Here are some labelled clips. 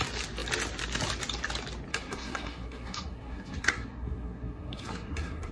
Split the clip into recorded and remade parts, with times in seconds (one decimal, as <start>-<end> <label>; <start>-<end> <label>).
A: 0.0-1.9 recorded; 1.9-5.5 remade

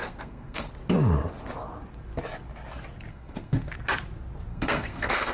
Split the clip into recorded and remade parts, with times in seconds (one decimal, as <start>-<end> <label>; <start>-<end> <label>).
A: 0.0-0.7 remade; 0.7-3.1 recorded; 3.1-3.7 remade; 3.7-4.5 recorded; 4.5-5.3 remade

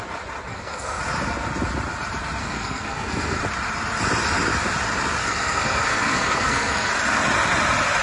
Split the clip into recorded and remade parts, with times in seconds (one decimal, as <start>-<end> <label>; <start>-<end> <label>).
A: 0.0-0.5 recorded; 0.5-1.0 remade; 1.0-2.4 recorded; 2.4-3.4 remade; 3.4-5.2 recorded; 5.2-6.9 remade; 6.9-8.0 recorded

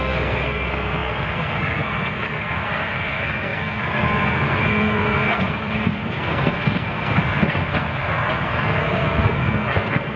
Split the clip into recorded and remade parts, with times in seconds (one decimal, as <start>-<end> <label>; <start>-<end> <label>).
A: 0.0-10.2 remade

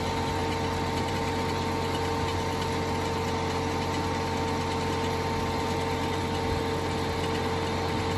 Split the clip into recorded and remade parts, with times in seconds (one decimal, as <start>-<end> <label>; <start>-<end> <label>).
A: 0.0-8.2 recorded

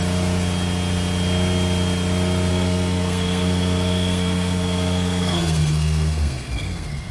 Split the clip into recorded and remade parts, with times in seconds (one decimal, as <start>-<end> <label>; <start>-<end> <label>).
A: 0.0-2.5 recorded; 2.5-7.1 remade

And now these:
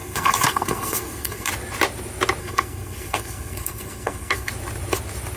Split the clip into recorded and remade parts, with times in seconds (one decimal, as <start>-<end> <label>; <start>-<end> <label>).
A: 0.0-1.5 remade; 1.5-2.4 recorded; 2.4-4.5 remade; 4.5-5.4 recorded